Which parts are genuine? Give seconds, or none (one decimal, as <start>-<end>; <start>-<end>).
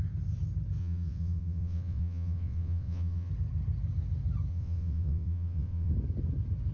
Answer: 0.0-0.8; 3.3-4.5; 5.9-6.7